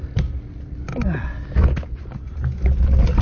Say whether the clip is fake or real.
real